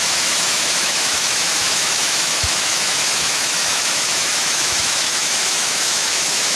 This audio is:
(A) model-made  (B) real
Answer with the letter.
A